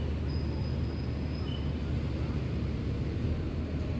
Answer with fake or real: real